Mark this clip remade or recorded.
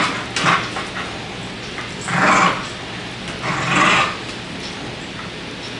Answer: recorded